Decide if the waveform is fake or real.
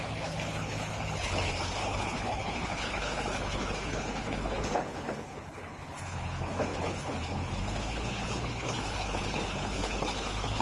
fake